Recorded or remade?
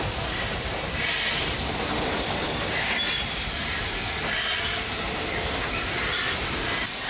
recorded